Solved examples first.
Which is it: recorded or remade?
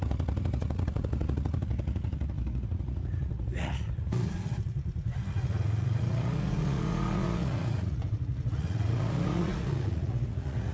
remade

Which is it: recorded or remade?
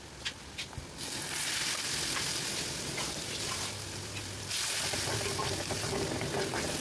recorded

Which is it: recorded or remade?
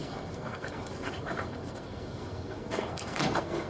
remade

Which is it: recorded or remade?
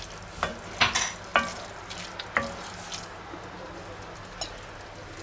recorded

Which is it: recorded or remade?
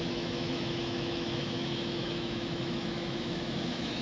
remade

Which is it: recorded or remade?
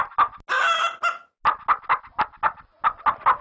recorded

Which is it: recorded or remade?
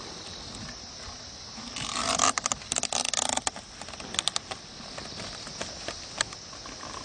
recorded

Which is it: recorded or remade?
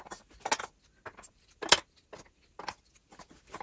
recorded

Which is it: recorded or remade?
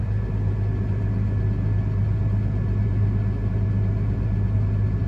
recorded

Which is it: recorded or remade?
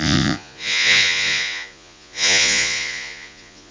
remade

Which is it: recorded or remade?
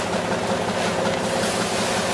recorded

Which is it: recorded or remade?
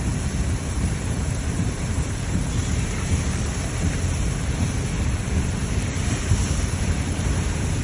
remade